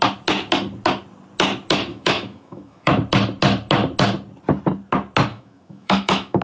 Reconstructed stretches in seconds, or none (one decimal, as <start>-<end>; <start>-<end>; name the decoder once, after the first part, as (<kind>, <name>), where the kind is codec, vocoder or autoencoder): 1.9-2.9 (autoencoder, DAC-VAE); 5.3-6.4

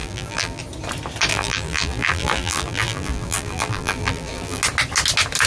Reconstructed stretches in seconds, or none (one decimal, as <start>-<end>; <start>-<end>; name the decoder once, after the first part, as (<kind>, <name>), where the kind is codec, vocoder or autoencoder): 0.0-0.6 (vocoder, BigVGAN v2); 1.3-4.6

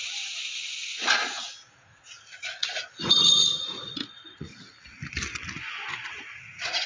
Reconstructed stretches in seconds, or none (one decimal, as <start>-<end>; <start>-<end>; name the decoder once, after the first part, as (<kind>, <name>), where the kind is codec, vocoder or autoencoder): 0.0-4.5 (vocoder, Vocos); 6.1-6.9